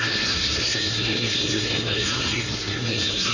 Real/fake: fake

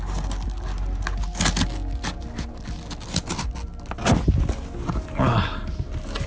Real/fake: real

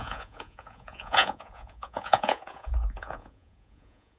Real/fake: fake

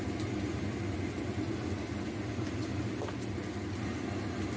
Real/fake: real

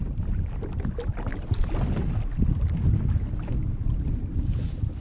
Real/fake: real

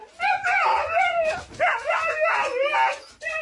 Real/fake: real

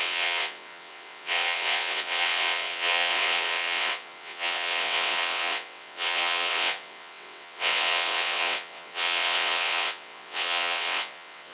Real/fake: fake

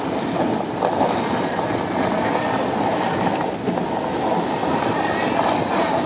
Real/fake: real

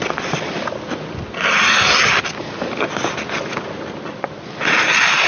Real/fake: real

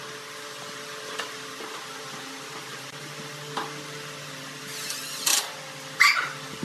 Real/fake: real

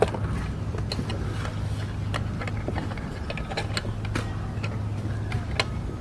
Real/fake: real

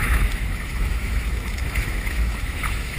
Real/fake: fake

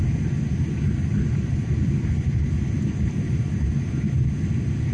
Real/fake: real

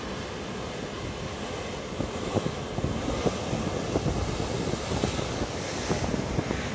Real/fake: real